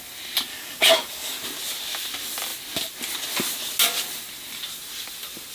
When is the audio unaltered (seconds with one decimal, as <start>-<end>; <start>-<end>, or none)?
0.0-0.5; 1.4-5.5